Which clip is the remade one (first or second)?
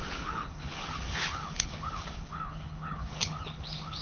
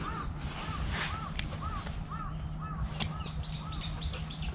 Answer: first